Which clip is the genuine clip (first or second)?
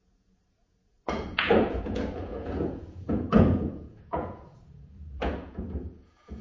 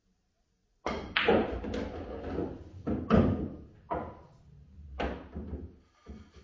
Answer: second